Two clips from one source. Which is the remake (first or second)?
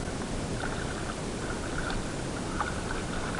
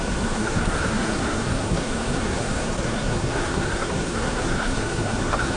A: second